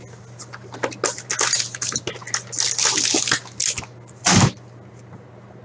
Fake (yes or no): no